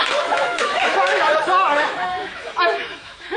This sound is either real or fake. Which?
fake